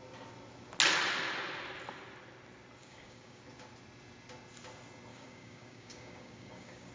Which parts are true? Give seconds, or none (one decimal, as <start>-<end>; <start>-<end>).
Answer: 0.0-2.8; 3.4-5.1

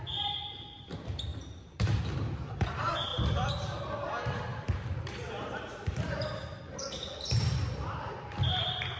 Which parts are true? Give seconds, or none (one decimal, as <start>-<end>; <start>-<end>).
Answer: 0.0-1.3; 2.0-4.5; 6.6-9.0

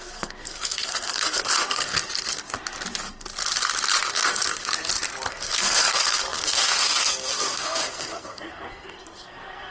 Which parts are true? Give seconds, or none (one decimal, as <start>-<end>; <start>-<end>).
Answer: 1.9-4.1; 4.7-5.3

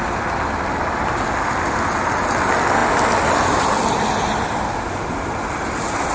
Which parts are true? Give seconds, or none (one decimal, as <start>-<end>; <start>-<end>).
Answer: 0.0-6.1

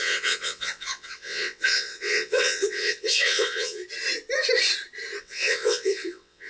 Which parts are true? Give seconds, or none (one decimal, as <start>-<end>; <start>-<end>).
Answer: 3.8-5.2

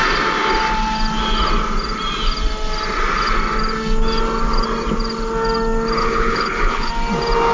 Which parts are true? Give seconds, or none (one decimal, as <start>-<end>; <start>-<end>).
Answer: 0.0-6.0; 6.9-7.5

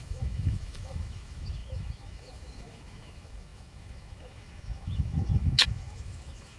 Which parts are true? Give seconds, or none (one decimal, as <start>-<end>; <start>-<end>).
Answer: none